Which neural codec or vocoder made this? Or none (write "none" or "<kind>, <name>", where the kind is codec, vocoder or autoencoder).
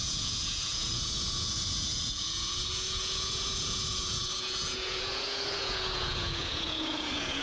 vocoder, Vocos